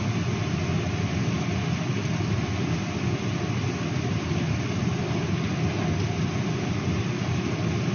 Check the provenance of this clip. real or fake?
real